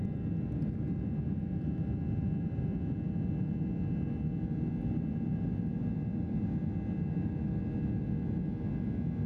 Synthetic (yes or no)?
no